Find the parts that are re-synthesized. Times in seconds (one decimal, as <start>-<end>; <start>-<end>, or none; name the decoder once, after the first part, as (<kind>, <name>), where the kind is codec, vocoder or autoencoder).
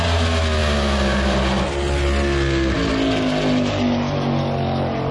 none